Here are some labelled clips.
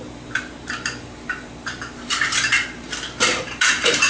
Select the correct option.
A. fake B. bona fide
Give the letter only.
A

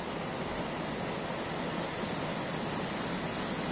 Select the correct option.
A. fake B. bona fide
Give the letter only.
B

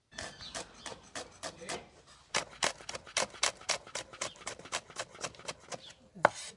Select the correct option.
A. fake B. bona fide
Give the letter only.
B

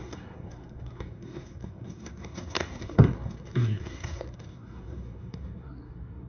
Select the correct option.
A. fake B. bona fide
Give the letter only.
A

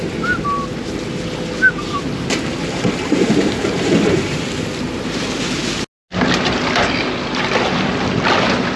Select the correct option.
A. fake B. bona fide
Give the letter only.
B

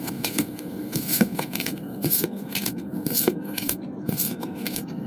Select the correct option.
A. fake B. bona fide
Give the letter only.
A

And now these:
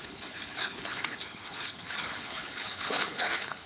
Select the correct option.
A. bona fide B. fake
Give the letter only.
B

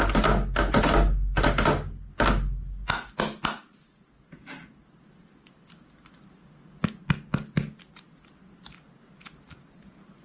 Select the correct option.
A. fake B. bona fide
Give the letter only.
B